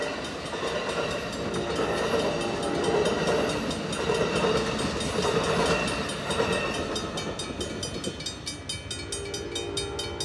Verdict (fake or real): real